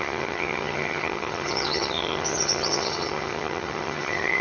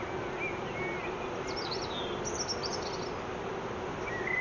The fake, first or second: first